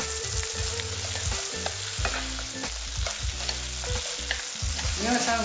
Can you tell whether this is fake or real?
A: real